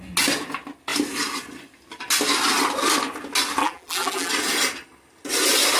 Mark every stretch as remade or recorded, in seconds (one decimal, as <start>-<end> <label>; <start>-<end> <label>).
0.0-3.6 recorded; 3.6-4.3 remade; 4.3-5.8 recorded